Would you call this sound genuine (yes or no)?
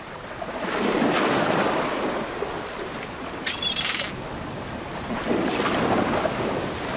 yes